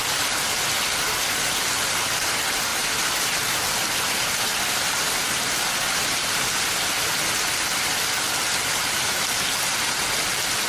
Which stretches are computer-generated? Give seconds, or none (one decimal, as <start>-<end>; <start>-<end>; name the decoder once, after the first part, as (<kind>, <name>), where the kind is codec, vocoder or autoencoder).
none